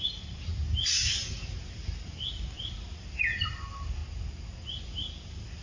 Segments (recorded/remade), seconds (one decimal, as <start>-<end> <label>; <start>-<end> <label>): 0.0-0.5 remade; 0.5-1.3 recorded; 1.3-4.0 remade; 4.0-4.8 recorded; 4.8-5.6 remade